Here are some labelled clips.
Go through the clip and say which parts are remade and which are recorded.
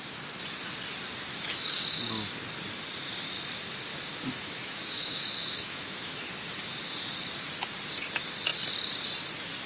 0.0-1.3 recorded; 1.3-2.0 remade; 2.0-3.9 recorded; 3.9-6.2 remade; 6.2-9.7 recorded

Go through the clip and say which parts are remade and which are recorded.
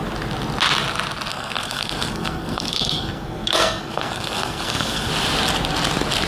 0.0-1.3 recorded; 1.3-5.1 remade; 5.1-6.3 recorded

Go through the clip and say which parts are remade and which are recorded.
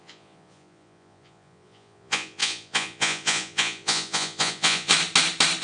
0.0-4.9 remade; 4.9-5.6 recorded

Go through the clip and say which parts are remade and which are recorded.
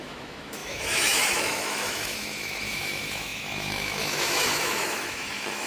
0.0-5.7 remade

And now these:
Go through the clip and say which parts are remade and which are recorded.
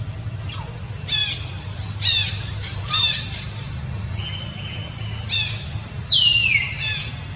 0.0-1.2 recorded; 1.2-2.3 remade; 2.3-3.0 recorded; 3.0-4.2 remade; 4.2-7.4 recorded